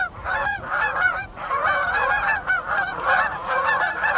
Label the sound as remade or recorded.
remade